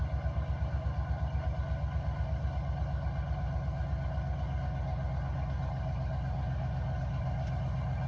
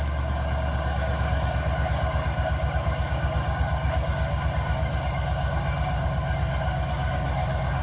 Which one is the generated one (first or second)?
second